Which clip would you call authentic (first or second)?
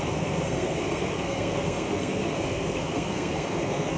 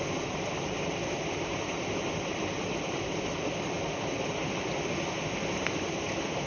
second